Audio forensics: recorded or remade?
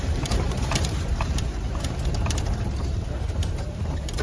remade